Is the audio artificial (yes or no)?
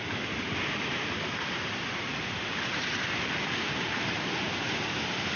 yes